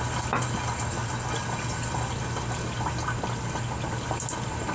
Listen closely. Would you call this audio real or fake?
real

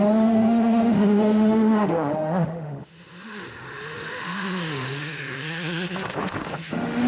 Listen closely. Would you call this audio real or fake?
fake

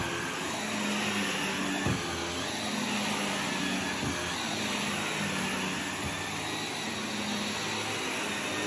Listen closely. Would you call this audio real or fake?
real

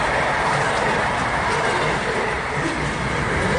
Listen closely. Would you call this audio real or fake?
real